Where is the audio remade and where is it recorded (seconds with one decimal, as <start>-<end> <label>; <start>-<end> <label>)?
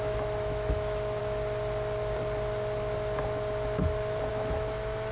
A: 0.0-1.2 remade; 1.2-4.3 recorded; 4.3-5.1 remade